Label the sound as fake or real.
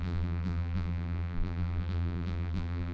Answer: fake